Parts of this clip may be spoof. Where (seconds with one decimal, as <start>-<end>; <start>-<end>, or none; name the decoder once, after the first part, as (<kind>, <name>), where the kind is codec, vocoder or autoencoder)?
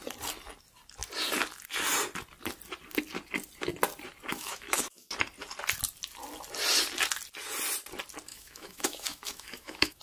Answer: 4.3-5.1 (autoencoder, DAC-VAE); 8.3-10.0